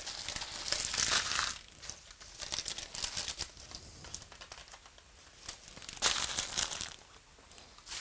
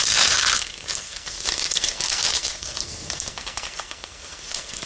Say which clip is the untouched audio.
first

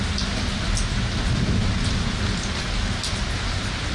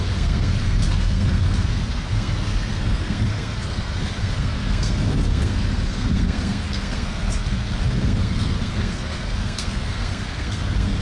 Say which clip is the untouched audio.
first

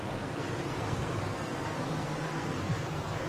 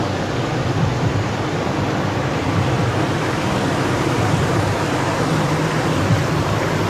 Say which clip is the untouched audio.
second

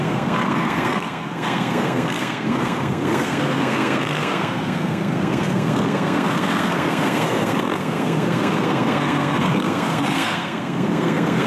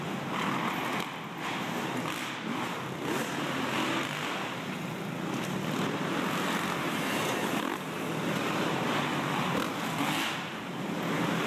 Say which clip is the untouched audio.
second